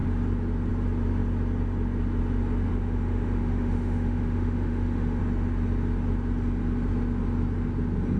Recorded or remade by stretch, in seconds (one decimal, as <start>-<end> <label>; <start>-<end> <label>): 0.0-2.7 recorded; 2.7-5.2 remade; 5.2-8.2 recorded